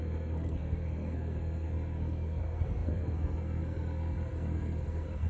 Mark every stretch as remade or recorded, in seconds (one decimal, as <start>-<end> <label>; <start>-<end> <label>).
0.0-5.3 remade